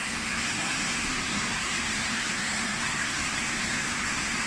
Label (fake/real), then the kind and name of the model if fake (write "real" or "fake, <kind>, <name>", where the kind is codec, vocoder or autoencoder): fake, codec, SNAC